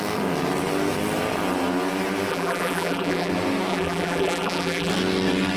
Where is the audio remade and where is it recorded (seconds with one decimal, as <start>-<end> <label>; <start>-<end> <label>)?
0.0-2.3 recorded; 2.3-3.3 remade; 3.3-3.7 recorded; 3.7-4.9 remade; 4.9-5.6 recorded